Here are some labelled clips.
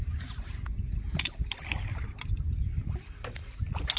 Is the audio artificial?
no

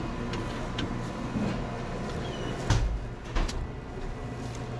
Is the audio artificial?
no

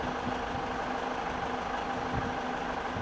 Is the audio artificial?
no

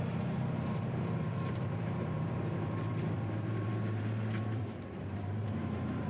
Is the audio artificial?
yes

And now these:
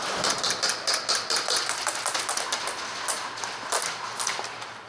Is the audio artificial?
no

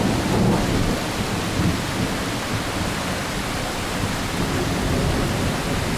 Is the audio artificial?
no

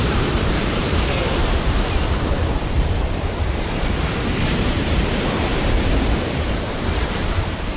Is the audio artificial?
yes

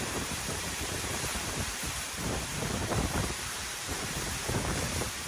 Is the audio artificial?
yes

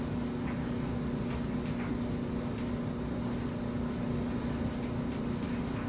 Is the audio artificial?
no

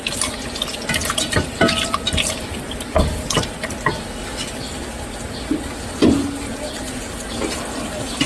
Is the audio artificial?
yes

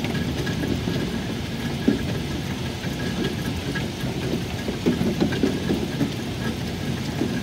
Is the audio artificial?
no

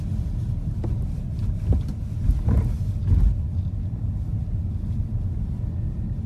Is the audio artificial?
no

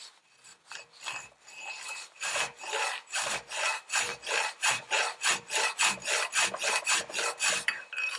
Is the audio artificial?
yes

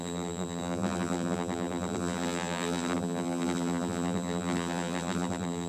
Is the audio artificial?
yes